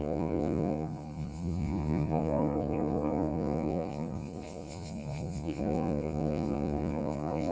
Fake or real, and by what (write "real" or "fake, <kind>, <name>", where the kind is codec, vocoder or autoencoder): fake, vocoder, Vocos